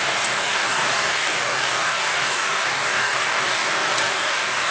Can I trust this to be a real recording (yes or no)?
no